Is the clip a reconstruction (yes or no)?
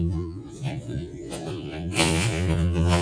yes